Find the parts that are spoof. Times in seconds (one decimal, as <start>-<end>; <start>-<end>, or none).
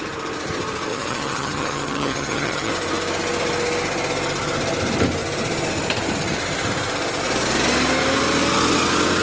0.9-2.7